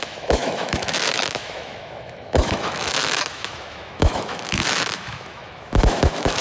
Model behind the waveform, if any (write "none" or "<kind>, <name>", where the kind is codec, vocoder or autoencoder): autoencoder, DAC-VAE